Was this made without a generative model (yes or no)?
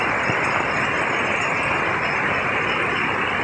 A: yes